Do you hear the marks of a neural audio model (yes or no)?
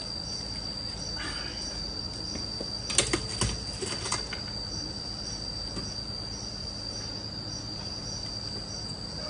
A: no